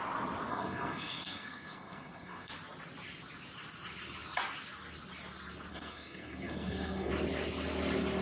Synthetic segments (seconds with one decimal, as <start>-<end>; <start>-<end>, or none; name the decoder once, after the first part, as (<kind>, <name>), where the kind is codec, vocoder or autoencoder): 0.5-2.5 (codec, SNAC); 5.7-7.1